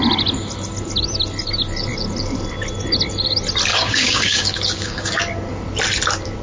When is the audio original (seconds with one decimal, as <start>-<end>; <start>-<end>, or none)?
0.0-3.7; 5.2-6.4